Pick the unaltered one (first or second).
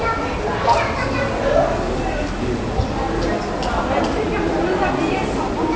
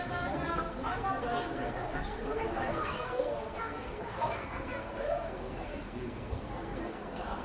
first